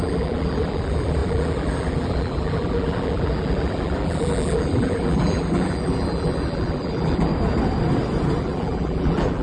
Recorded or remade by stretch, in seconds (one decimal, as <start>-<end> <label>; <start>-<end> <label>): 0.0-7.3 remade; 7.3-8.4 recorded; 8.4-9.4 remade